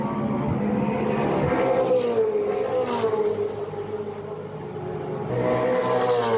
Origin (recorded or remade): recorded